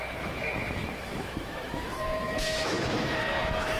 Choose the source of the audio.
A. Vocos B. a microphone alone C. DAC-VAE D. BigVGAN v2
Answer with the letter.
C